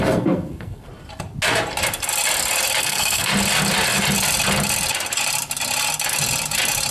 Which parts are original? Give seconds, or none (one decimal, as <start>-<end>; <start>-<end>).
0.9-2.8; 3.3-6.9